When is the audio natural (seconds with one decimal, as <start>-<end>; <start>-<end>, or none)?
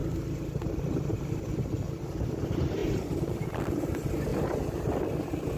0.0-2.8; 3.4-4.3; 5.0-5.6